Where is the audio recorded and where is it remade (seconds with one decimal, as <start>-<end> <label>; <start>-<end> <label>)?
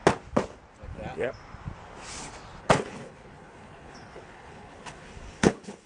0.0-2.6 recorded; 2.6-5.9 remade